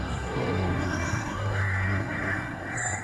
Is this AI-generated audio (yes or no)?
yes